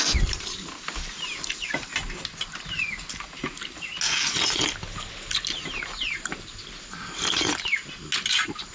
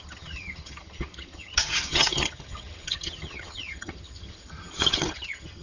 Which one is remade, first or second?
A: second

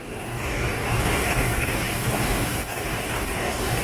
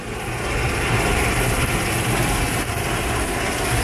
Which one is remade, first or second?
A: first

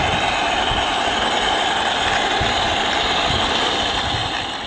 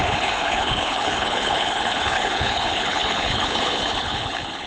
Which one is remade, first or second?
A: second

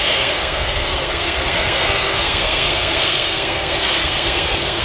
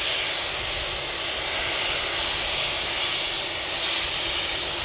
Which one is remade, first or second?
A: first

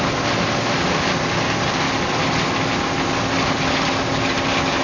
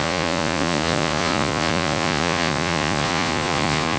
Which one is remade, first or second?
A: second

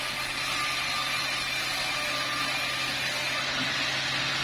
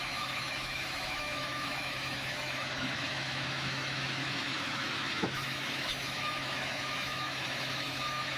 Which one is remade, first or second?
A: second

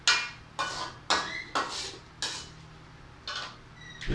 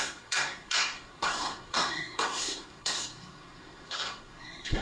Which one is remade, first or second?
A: second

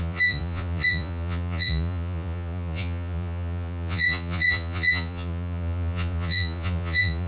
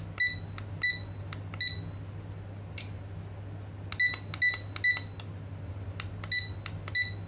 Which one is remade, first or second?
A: first